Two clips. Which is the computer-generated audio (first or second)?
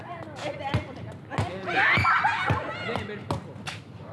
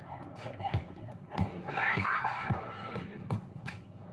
second